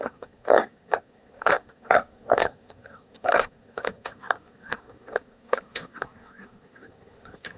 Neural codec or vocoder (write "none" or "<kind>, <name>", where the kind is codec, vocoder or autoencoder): codec, SNAC